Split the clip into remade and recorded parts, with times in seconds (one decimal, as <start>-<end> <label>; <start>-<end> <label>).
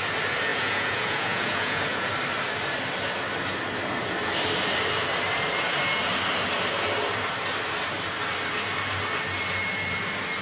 0.0-0.5 recorded; 0.5-2.1 remade; 2.1-10.4 recorded